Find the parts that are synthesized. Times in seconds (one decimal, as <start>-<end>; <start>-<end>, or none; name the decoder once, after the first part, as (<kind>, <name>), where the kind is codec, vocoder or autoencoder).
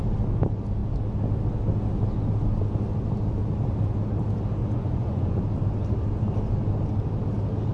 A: 4.6-5.4 (vocoder, Vocos)